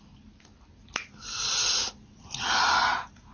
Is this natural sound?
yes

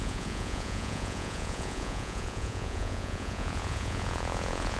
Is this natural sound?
no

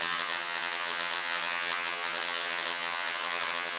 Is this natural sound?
no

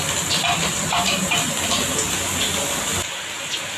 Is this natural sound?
yes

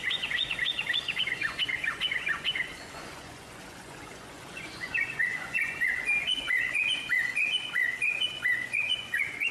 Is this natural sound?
no